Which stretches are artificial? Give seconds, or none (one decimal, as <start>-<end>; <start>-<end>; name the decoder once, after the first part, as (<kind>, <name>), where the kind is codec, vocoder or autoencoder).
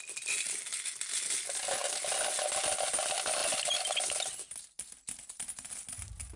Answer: none